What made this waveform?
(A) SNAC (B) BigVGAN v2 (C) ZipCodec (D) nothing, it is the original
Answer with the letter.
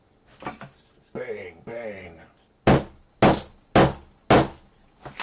D